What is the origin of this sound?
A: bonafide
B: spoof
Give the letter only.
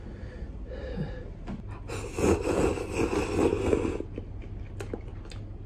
A